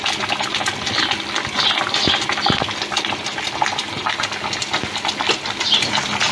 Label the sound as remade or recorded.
recorded